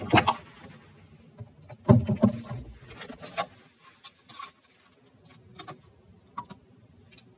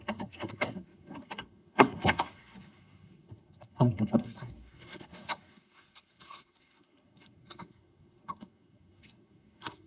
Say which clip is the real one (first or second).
first